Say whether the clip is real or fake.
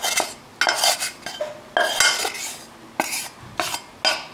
real